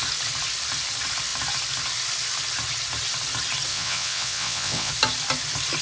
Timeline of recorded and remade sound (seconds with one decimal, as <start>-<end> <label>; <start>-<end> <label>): 0.0-3.7 recorded; 3.7-4.9 remade; 4.9-5.8 recorded